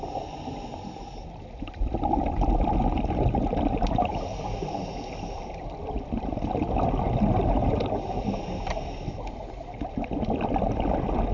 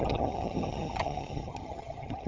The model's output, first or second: second